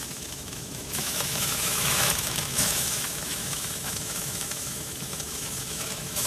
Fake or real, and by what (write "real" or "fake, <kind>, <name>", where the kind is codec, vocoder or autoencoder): fake, autoencoder, DAC-VAE